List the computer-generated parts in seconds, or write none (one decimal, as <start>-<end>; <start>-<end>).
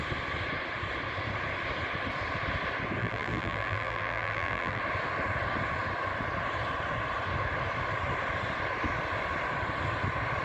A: 3.0-4.8